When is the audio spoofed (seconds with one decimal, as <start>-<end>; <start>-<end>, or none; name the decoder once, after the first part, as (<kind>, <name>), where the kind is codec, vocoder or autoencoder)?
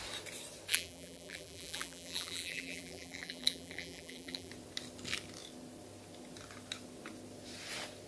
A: 0.7-4.5 (vocoder, BigVGAN v2)